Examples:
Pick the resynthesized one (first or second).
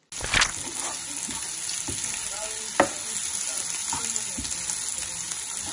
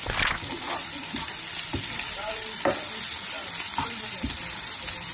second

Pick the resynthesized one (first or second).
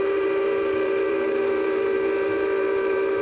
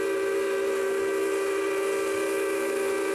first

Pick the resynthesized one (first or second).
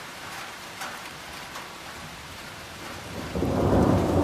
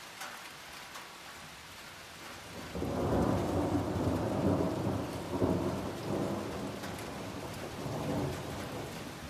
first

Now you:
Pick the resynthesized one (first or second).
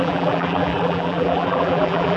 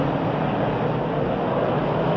first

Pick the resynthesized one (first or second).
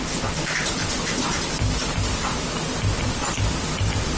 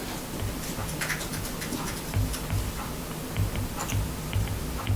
first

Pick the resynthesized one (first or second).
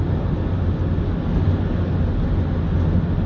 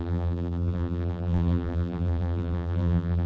second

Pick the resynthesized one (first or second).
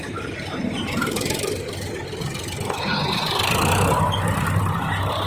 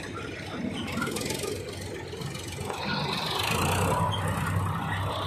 first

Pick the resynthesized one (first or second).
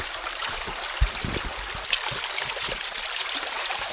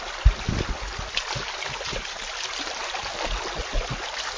first